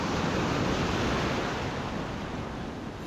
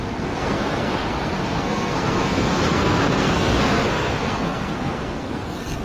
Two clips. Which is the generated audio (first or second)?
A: second